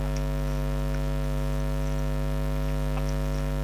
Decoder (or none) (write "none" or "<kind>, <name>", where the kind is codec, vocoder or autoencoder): none